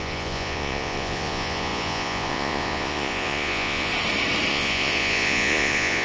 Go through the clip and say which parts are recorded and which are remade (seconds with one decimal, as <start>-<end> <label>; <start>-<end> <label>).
0.0-3.9 remade; 3.9-4.5 recorded; 4.5-6.0 remade